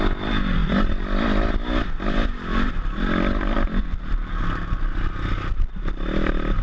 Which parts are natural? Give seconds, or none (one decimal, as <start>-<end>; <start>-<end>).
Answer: 0.0-6.6